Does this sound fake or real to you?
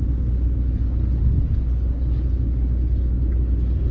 real